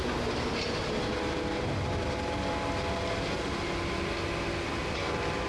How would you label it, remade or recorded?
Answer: recorded